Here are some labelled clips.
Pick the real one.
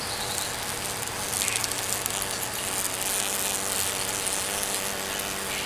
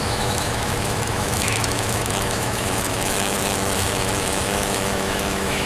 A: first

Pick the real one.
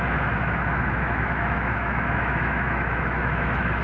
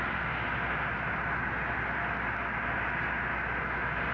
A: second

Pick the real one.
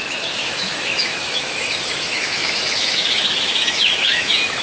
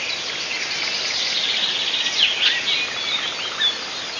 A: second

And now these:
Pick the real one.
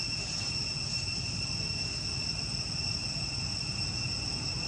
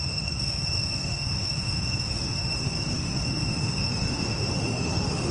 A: first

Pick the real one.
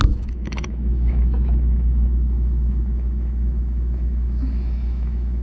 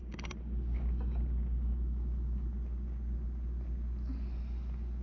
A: second